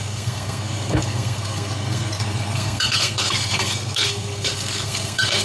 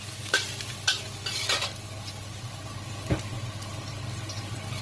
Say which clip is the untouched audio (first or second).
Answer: second